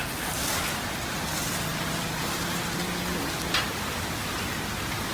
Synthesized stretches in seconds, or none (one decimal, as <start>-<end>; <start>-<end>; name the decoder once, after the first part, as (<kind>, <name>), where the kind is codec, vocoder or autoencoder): none